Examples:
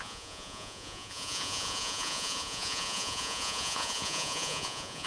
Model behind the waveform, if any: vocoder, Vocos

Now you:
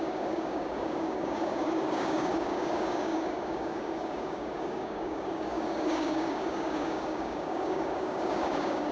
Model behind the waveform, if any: codec, DAC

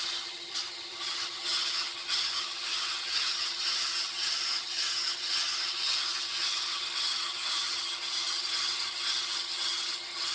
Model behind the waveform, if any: vocoder, HiFi-GAN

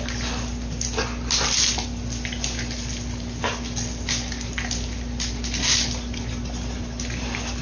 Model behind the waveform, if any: none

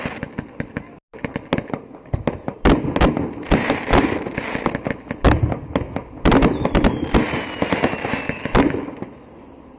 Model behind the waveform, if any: none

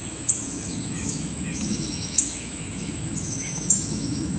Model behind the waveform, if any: autoencoder, DAC-VAE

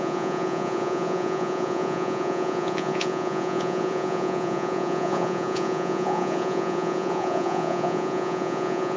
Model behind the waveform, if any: vocoder, Vocos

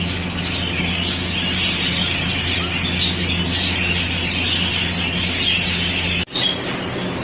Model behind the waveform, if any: none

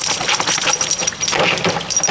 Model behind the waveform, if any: none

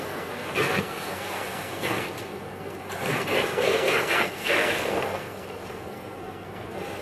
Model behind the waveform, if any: codec, SNAC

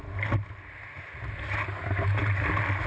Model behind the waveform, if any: none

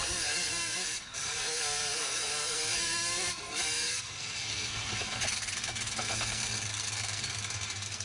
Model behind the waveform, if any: codec, SNAC